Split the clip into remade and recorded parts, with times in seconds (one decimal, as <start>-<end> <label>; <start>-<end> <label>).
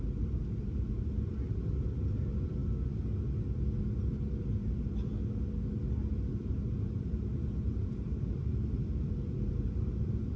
0.0-1.3 remade; 1.3-2.1 recorded; 2.1-2.6 remade; 2.6-4.4 recorded; 4.4-5.1 remade; 5.1-6.5 recorded; 6.5-10.4 remade